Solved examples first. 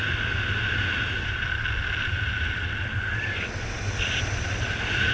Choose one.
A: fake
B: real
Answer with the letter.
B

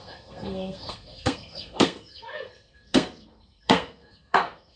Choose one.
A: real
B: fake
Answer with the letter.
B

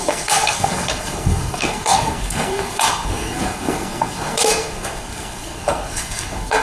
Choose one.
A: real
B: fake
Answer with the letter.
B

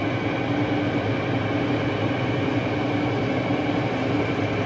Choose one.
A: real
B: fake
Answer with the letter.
A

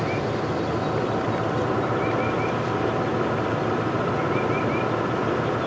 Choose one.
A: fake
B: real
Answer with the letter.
B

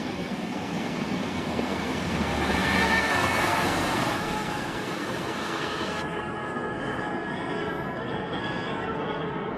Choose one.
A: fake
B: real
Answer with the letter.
A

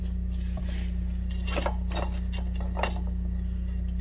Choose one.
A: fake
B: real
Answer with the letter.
B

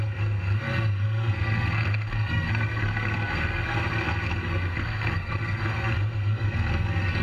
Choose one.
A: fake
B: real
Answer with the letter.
A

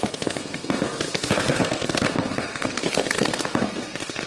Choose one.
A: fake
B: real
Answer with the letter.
A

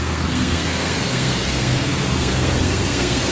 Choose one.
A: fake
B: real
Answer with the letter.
A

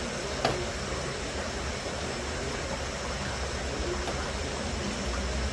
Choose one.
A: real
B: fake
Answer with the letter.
A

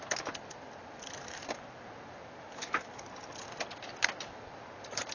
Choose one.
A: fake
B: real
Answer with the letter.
B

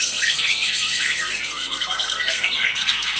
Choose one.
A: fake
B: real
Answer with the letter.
A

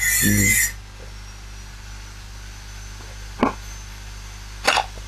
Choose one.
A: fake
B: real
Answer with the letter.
B